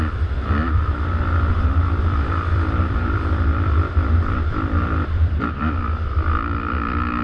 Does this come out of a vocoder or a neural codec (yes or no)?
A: yes